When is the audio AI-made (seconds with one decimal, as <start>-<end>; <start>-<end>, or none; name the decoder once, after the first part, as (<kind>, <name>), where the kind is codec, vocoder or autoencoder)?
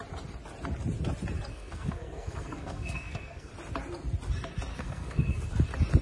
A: 1.5-3.5 (codec, SNAC); 4.7-5.4